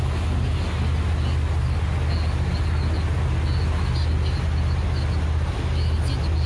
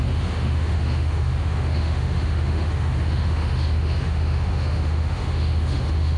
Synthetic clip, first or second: second